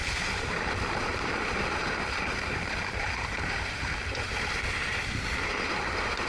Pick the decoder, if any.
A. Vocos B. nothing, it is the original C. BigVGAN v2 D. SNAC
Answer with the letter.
C